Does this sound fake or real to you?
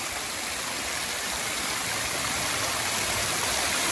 real